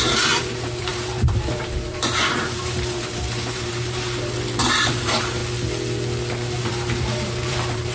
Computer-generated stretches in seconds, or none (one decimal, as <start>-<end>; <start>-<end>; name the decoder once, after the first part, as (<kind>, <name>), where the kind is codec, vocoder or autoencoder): 0.0-5.4 (vocoder, BigVGAN v2); 6.6-7.9